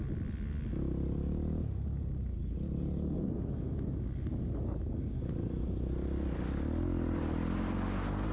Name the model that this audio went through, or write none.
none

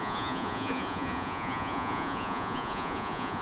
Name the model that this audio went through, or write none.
vocoder, Vocos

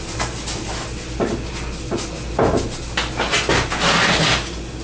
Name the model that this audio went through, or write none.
none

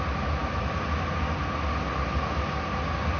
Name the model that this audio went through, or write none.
none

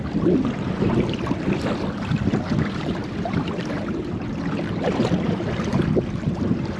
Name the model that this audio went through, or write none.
none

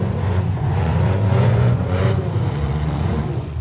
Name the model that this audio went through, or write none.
vocoder, Vocos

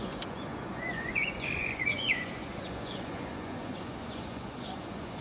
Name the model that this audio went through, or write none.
vocoder, Vocos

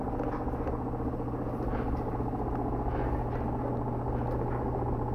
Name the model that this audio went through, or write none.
none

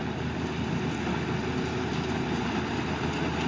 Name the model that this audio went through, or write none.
none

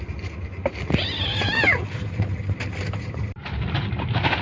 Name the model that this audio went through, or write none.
none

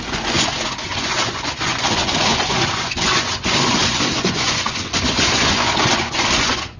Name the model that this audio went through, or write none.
vocoder, Vocos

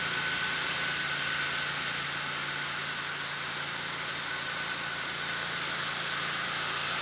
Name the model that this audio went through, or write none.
none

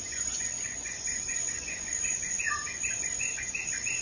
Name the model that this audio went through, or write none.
vocoder, Vocos